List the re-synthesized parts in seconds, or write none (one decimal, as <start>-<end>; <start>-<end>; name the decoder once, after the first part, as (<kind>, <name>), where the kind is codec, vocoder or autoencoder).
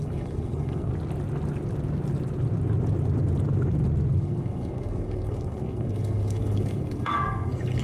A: 0.0-0.9 (codec, SNAC); 4.2-7.8